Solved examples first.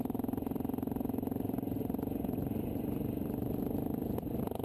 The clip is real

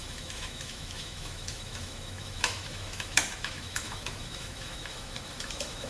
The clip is fake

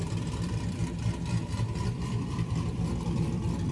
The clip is fake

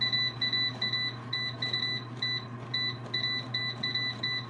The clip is real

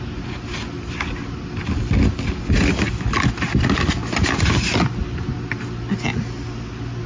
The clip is real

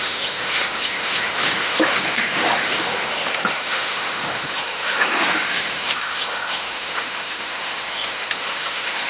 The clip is fake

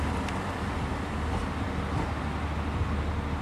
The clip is real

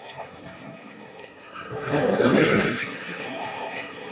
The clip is fake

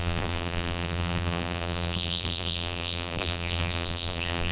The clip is fake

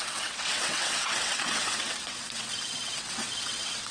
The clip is fake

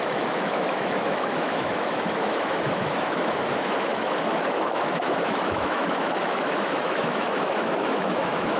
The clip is fake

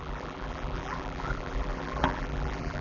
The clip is fake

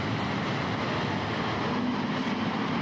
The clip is real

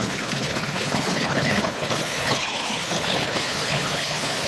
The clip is fake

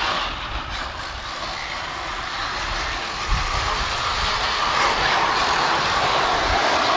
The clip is real